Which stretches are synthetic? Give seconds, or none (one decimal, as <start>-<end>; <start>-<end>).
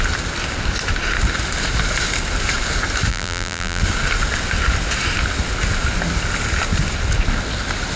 3.1-3.8